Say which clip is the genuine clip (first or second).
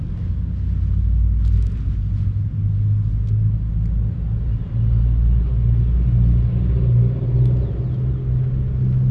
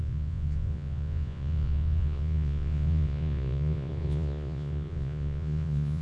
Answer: first